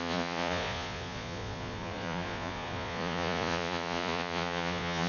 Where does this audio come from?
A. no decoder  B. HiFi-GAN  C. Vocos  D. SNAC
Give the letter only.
C